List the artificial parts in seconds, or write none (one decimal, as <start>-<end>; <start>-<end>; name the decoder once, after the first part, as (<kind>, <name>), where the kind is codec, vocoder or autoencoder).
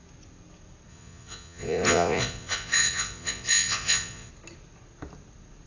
0.9-4.3 (vocoder, Vocos)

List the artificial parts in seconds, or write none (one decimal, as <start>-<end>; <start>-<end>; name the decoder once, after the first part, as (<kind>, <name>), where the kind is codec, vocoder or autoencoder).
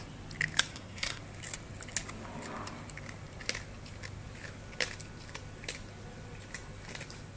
0.7-1.2 (codec, SNAC)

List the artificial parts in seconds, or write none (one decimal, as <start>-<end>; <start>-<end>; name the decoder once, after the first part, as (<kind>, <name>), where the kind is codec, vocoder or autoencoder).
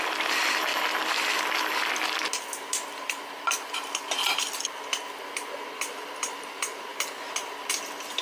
none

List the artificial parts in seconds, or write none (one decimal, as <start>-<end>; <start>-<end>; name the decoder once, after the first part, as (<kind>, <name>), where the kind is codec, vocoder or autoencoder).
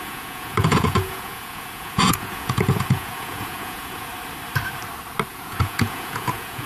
0.0-4.1 (vocoder, Vocos); 5.3-6.7